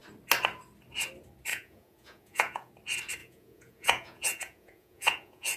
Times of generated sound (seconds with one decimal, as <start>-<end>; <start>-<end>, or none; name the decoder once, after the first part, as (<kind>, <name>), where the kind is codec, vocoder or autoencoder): 1.5-2.7 (vocoder, Vocos); 3.2-5.6

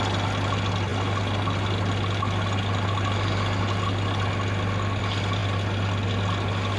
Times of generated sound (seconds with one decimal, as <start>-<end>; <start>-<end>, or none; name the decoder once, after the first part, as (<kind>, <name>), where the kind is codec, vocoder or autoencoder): none